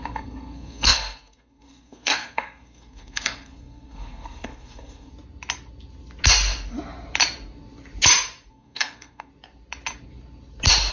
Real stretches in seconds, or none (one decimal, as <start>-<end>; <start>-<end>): 5.1-8.5; 9.3-10.9